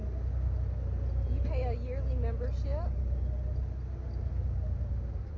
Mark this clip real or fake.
real